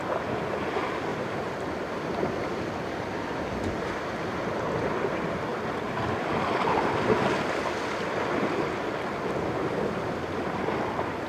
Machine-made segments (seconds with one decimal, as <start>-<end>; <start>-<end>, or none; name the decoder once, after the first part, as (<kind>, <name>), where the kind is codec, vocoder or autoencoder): 1.1-2.0 (vocoder, BigVGAN v2)